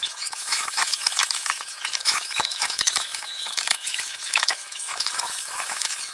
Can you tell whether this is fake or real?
fake